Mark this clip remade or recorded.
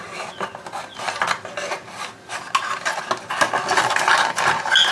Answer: recorded